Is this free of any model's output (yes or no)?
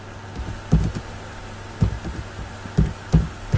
yes